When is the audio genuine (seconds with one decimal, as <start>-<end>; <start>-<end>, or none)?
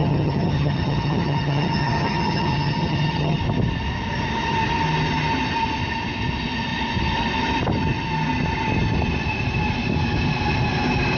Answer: 3.4-11.2